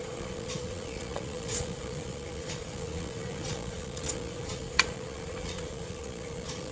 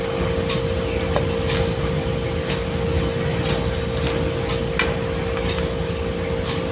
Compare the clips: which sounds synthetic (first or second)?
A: first